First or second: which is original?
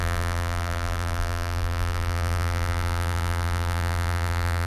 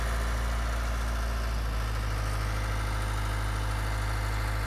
second